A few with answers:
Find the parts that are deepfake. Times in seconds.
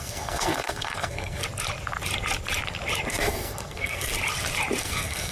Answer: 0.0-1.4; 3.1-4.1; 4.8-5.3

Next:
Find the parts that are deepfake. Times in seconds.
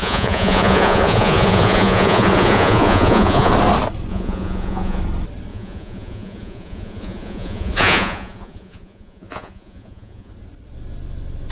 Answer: 0.0-3.5; 4.1-5.0; 5.5-10.3